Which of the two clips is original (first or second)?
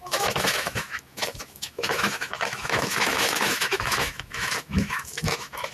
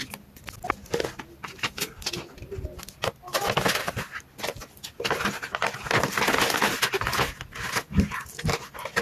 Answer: second